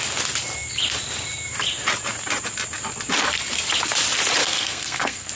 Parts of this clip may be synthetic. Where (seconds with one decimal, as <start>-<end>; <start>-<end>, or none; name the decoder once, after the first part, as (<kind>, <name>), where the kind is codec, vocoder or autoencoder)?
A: 4.4-5.3 (codec, SNAC)